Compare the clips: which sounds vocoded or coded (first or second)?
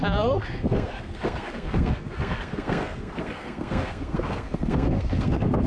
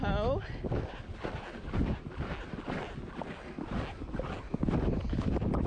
first